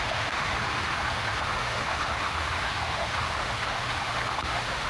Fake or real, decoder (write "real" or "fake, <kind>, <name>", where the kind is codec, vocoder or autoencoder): fake, autoencoder, DAC-VAE